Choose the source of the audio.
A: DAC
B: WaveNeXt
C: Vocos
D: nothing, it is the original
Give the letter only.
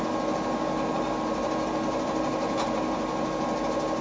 D